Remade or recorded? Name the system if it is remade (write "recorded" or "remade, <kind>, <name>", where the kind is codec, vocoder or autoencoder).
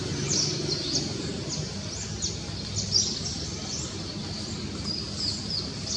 recorded